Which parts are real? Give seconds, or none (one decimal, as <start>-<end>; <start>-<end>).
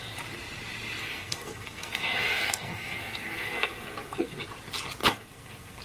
0.0-1.0; 4.4-5.0